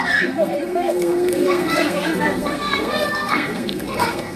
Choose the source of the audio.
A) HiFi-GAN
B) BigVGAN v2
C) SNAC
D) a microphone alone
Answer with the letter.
C